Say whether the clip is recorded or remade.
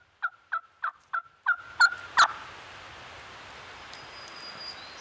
recorded